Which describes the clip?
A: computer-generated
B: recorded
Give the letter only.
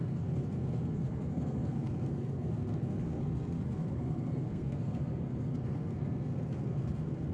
A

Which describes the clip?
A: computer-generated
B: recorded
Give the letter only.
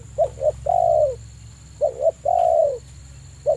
B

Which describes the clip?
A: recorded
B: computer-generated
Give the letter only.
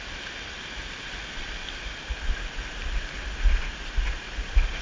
A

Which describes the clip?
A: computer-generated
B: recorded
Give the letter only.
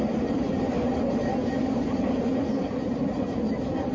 A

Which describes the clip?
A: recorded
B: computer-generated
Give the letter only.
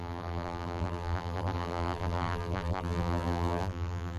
B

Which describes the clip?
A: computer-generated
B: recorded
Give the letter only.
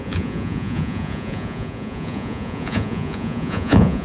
A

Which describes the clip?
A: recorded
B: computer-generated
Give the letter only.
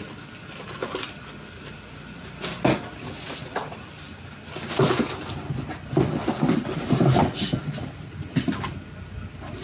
A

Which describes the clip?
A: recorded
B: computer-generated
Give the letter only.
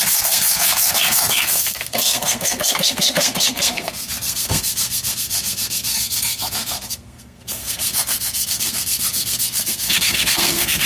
B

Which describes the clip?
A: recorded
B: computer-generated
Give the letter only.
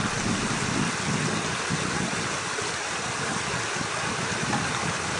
A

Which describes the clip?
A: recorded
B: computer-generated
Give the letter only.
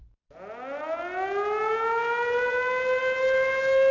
A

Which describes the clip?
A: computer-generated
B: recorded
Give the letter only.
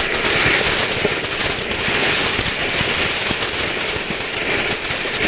B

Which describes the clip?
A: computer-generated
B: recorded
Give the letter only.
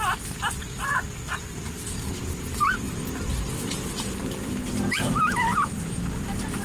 B